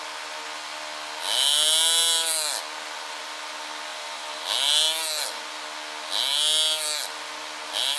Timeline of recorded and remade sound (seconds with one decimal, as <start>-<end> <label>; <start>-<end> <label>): 0.0-3.9 recorded; 3.9-4.4 remade; 4.4-8.0 recorded